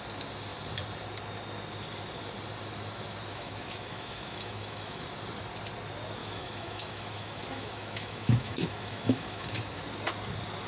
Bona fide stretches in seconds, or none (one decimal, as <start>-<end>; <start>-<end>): 0.0-3.3; 5.0-6.2; 9.8-10.7